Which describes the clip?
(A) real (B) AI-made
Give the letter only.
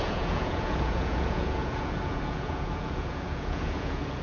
B